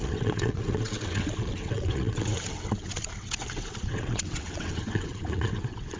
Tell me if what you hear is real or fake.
fake